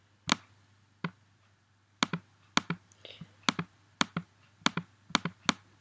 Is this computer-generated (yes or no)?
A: no